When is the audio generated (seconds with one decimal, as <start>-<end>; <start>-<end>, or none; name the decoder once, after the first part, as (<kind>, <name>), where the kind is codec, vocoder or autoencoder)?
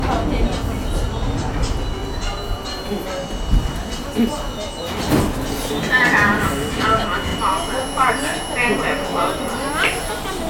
none